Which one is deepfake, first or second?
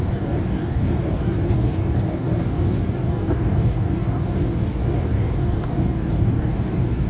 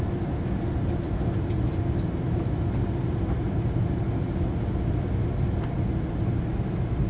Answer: first